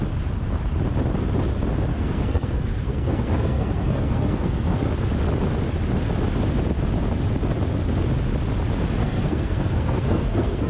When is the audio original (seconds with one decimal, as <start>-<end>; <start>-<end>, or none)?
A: 0.0-1.9; 4.9-9.0